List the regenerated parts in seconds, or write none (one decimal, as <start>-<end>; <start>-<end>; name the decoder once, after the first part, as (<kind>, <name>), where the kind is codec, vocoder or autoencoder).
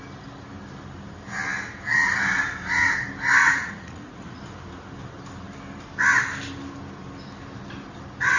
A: 3.4-4.4 (vocoder, Vocos)